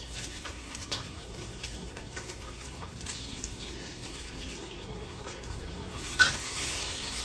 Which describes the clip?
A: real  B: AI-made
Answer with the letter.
B